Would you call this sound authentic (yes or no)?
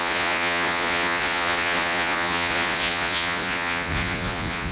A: no